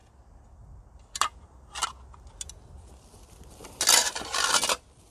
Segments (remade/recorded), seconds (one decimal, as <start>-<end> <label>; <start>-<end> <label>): 0.0-5.1 recorded